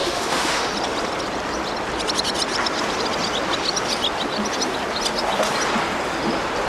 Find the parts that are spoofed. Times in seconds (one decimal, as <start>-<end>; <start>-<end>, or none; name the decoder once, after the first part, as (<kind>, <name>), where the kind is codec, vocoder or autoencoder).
0.0-0.7 (autoencoder, DAC-VAE)